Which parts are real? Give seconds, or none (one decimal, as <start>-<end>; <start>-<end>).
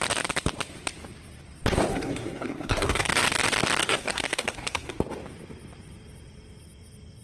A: 0.0-1.9; 3.1-3.8; 5.0-7.2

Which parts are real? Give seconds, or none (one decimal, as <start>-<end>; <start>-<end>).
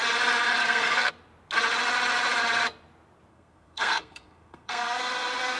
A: 0.0-0.6; 1.1-3.3; 5.0-5.6